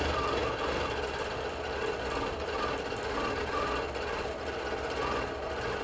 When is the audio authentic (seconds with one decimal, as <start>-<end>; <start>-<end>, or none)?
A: 0.0-5.8